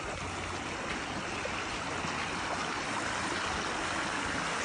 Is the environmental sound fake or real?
real